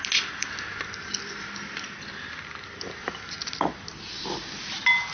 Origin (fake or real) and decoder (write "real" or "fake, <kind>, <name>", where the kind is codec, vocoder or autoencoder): real